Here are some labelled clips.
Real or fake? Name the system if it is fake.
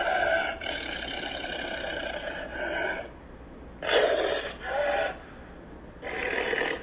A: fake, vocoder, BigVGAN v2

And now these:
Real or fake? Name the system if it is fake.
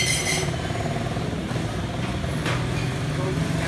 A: real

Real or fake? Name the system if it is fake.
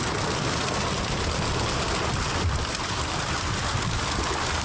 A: real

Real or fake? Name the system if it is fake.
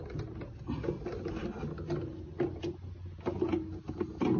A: real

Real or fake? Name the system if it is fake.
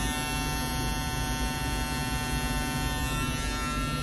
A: real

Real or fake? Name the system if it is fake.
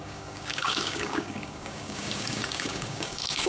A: fake, codec, DAC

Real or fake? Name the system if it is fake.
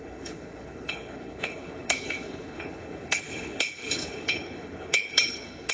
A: fake, codec, HILCodec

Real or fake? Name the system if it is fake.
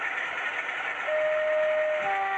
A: real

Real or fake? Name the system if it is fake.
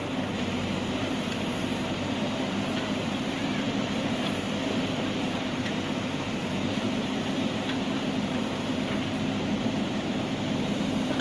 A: fake, vocoder, BigVGAN v2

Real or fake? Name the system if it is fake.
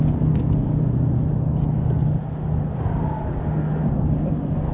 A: real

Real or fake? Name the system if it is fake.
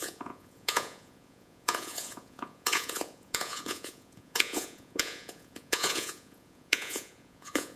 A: fake, vocoder, Vocos